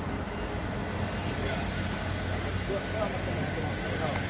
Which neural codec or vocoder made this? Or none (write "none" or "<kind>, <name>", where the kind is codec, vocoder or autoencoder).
none